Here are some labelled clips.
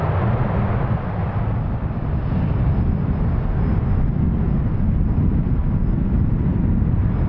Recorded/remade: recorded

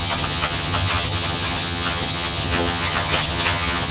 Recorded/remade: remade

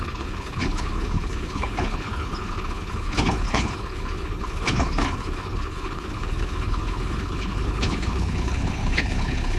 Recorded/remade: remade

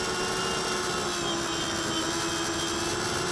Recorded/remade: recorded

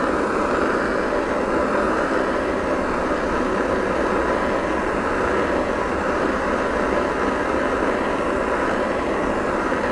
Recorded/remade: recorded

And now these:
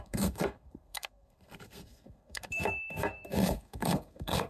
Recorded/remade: remade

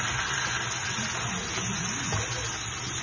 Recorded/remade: recorded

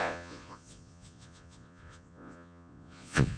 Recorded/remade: remade